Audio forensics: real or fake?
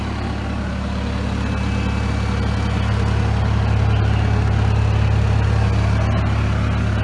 real